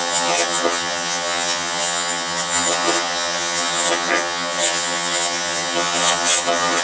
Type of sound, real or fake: fake